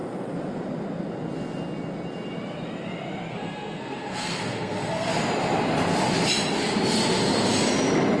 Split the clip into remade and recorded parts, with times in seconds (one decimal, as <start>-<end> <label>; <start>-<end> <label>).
0.0-3.3 recorded; 3.3-5.1 remade; 5.1-8.2 recorded